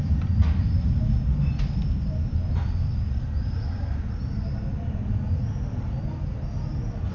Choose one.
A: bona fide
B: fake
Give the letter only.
A